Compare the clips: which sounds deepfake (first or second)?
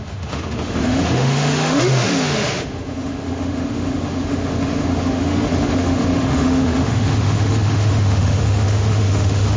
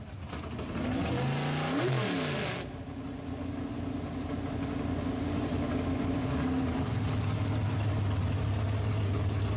first